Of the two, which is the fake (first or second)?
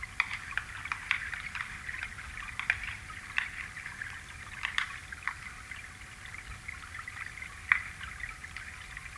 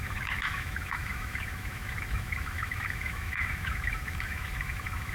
second